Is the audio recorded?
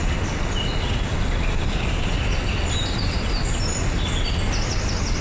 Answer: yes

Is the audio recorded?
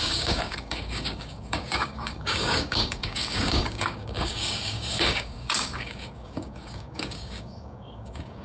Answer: no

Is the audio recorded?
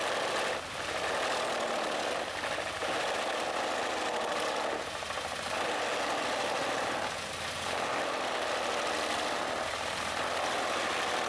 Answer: yes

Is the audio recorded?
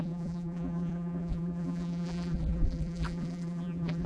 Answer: no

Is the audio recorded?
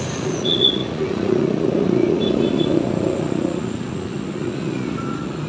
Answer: no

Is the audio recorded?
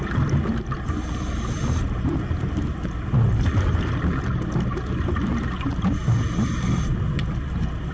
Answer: no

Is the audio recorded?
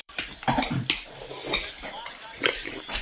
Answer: no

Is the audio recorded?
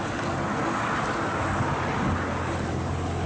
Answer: yes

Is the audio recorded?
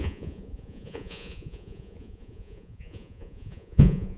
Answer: no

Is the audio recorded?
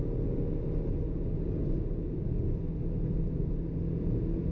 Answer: yes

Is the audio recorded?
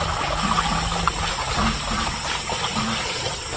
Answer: yes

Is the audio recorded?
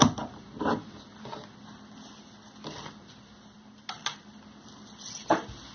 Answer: yes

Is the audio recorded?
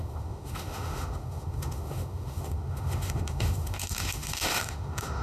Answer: no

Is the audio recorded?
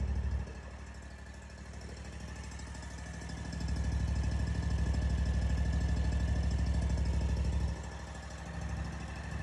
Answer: yes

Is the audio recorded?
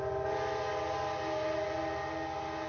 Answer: yes